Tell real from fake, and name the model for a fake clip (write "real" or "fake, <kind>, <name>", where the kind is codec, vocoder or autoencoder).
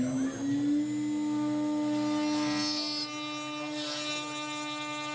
real